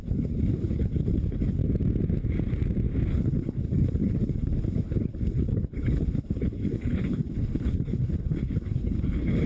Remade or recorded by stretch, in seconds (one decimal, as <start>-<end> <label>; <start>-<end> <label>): 0.0-1.6 remade; 1.6-3.1 recorded; 3.1-9.5 remade